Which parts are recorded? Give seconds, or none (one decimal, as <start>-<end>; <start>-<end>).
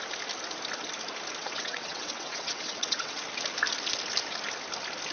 0.0-1.4; 3.2-5.1